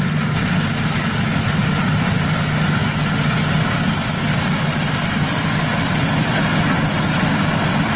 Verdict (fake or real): real